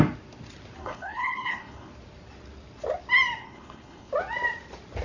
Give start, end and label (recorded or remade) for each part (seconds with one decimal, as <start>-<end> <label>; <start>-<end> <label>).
0.0-0.8 recorded; 0.8-1.9 remade; 1.9-3.4 recorded; 3.4-4.1 remade; 4.1-5.0 recorded